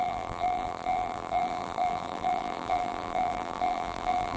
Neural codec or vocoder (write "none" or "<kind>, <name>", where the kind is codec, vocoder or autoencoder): vocoder, BigVGAN v2